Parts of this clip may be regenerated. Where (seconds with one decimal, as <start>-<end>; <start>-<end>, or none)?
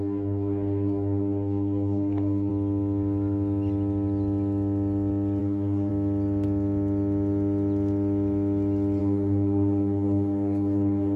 0.0-2.5; 5.4-5.9; 9.0-11.2